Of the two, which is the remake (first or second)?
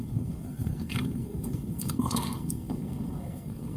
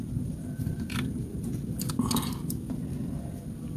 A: first